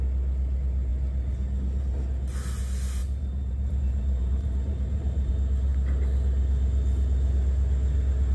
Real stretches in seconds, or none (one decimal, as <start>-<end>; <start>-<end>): 0.0-3.0; 5.3-8.3